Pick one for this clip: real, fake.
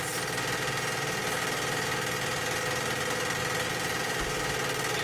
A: real